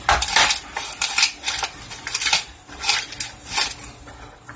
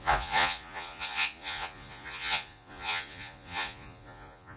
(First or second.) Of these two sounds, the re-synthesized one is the second